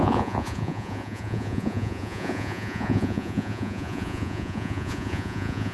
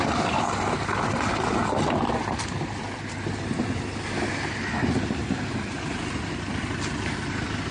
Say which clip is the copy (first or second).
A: first